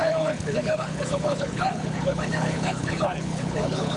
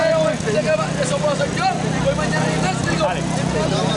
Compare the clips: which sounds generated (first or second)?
first